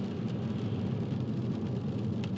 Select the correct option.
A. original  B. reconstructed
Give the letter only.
A